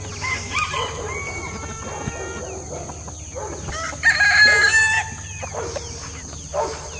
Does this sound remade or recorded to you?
recorded